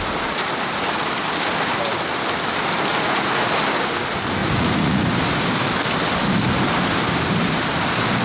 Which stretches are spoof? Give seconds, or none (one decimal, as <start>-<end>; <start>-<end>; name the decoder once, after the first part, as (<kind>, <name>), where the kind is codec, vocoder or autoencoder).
2.9-3.4 (vocoder, Vocos); 4.4-5.0